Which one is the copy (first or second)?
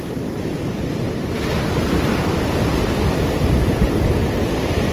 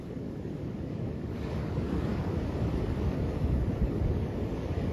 second